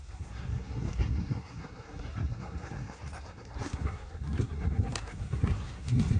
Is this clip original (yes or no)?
no